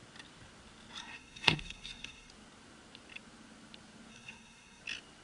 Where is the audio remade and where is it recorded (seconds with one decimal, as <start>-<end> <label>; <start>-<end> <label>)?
0.0-1.0 recorded; 1.0-2.3 remade; 2.3-4.1 recorded; 4.1-4.8 remade; 4.8-5.2 recorded